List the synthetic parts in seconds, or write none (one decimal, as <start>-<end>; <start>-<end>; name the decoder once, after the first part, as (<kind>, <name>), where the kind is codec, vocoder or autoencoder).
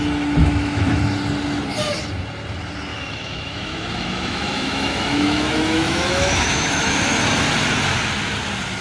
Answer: 0.4-1.0 (autoencoder, DAC-VAE); 2.9-6.9